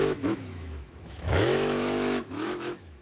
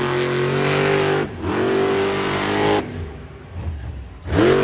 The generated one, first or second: first